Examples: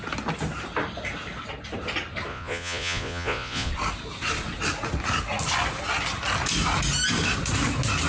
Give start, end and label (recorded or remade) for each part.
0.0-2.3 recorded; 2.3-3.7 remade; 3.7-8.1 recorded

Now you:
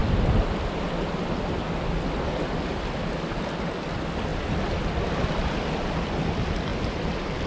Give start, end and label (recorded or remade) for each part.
0.0-7.5 recorded

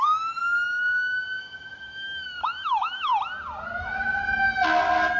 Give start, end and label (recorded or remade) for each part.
0.0-0.4 remade; 0.4-1.4 recorded; 1.4-3.1 remade; 3.1-3.8 recorded; 3.8-4.2 remade; 4.2-5.2 recorded

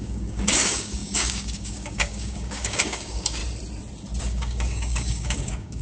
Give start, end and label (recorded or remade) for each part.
0.0-3.4 remade; 3.4-4.2 recorded; 4.2-5.8 remade

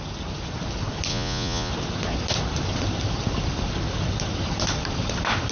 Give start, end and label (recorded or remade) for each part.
0.0-1.1 recorded; 1.1-1.7 remade; 1.7-5.5 recorded

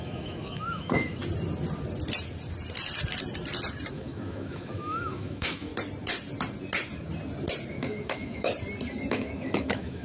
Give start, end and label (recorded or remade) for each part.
0.0-1.2 remade; 1.2-3.9 recorded; 3.9-5.7 remade; 5.7-7.7 recorded; 7.7-8.5 remade; 8.5-9.1 recorded; 9.1-10.0 remade

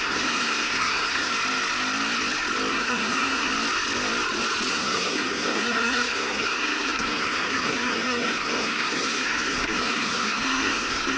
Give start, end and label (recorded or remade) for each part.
0.0-1.3 remade; 1.3-2.7 recorded; 2.7-3.5 remade; 3.5-4.7 recorded; 4.7-11.2 remade

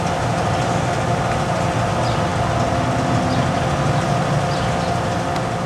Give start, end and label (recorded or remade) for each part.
0.0-5.7 recorded